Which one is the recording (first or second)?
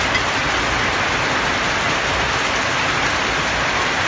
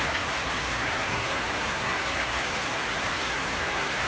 first